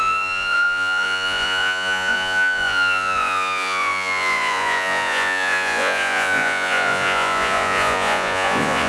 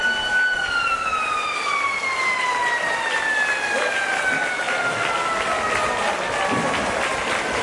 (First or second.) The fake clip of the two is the first